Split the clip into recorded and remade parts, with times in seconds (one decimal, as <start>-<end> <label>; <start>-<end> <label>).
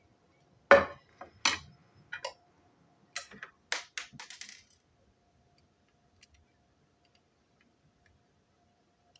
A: 0.0-9.2 recorded